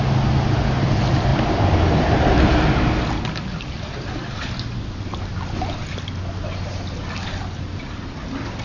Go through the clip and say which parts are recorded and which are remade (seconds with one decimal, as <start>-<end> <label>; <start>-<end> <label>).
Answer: 0.0-1.3 recorded; 1.3-2.5 remade; 2.5-8.6 recorded